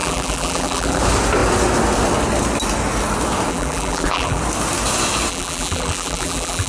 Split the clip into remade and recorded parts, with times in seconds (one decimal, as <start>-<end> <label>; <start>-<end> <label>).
0.0-1.0 remade; 1.0-3.5 recorded; 3.5-4.4 remade; 4.4-5.3 recorded; 5.3-6.7 remade

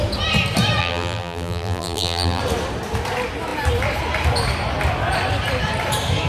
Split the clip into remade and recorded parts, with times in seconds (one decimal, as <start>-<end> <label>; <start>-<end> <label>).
0.0-0.8 recorded; 0.8-2.4 remade; 2.4-6.3 recorded

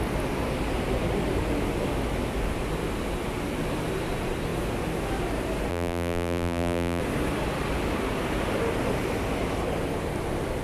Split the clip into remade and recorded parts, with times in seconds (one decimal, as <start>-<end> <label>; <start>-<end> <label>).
0.0-5.7 recorded; 5.7-7.0 remade; 7.0-10.6 recorded